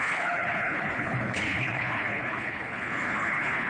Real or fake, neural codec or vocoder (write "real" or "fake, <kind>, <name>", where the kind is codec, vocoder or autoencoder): fake, codec, HILCodec